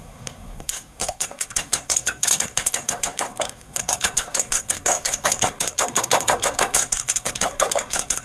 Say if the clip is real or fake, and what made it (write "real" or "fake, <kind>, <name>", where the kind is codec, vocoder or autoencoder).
fake, codec, SNAC